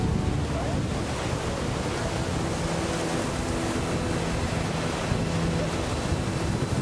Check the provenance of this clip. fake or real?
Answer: real